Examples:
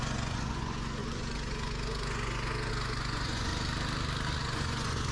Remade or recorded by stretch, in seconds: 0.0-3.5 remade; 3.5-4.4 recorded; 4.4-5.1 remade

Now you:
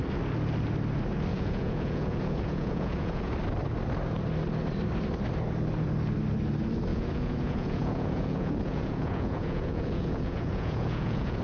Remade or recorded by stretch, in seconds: 0.0-1.3 recorded; 1.3-3.3 remade; 3.3-6.9 recorded; 6.9-11.4 remade

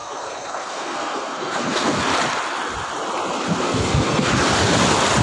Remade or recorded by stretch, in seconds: 0.0-2.0 remade; 2.0-3.5 recorded; 3.5-4.3 remade; 4.3-5.2 recorded

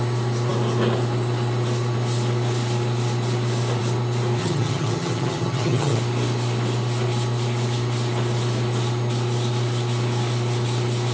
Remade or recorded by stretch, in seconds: 0.0-4.4 recorded; 4.4-6.0 remade; 6.0-11.1 recorded